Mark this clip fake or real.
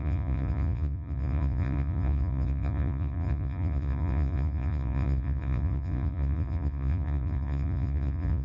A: fake